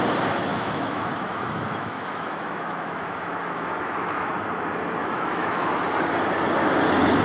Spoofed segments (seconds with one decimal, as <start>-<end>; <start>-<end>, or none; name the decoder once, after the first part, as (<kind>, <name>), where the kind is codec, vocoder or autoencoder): 0.5-4.3 (autoencoder, DAC-VAE); 5.0-5.7